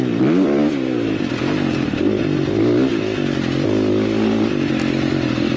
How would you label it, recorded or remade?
recorded